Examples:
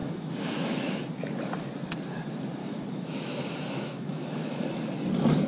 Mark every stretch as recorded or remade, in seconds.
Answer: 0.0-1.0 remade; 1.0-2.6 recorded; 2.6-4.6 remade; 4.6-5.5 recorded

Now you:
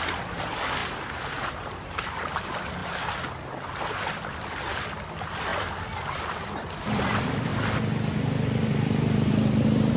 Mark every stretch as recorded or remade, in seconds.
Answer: 0.0-2.8 remade; 2.8-4.3 recorded; 4.3-7.5 remade; 7.5-10.0 recorded

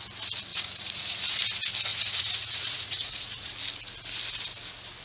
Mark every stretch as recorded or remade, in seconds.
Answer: 0.0-0.5 recorded; 0.5-1.4 remade; 1.4-1.9 recorded; 1.9-3.5 remade; 3.5-5.0 recorded

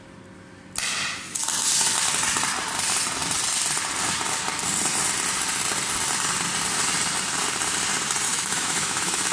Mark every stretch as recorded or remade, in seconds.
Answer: 0.0-8.3 recorded; 8.3-9.3 remade

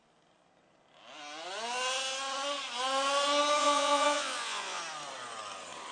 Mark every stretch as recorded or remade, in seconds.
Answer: 0.0-3.6 recorded; 3.6-4.8 remade; 4.8-5.9 recorded

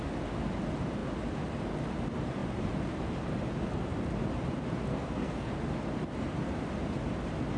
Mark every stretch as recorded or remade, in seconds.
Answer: 0.0-4.9 recorded; 4.9-5.5 remade; 5.5-7.6 recorded